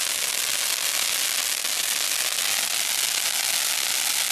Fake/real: real